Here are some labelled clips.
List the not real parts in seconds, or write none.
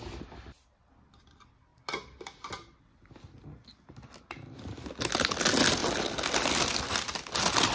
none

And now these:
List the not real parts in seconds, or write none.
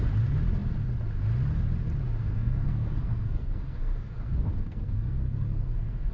2.2-6.1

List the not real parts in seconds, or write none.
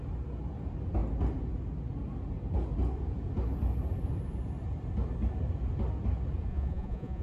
6.5-7.2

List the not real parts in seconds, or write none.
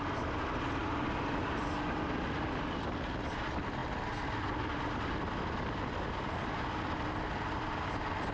0.8-2.2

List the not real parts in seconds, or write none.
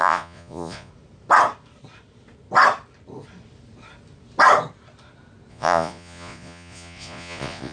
0.0-0.9; 5.5-7.7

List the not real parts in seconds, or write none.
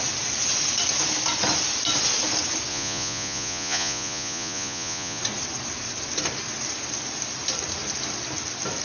2.7-5.2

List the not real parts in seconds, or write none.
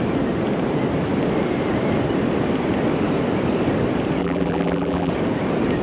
4.2-5.1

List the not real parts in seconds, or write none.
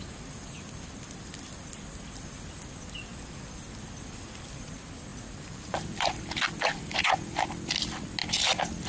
none